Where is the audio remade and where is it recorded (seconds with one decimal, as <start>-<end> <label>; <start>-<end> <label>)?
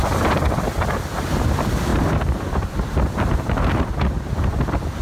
0.0-1.9 recorded; 1.9-4.6 remade; 4.6-5.0 recorded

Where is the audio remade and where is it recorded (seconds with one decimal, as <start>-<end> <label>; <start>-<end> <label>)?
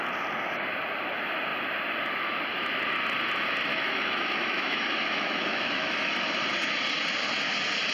0.0-3.7 recorded; 3.7-6.1 remade; 6.1-7.9 recorded